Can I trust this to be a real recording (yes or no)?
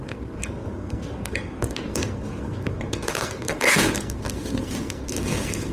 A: no